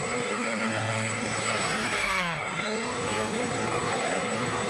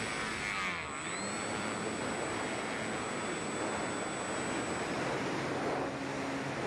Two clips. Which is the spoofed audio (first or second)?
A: first